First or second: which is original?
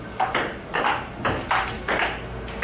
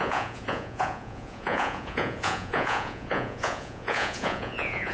first